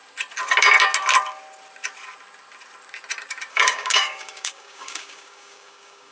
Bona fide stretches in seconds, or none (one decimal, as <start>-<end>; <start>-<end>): 0.0-3.5